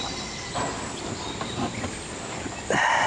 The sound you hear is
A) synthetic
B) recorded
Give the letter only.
B